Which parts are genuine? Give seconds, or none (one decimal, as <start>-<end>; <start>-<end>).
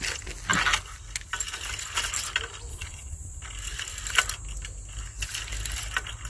0.0-2.7; 3.4-6.3